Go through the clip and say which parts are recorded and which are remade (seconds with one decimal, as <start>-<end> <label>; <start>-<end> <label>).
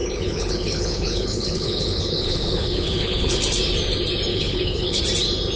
0.0-3.4 remade; 3.4-4.3 recorded; 4.3-5.0 remade; 5.0-5.6 recorded